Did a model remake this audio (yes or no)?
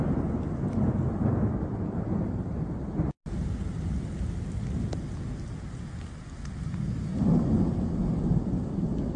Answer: no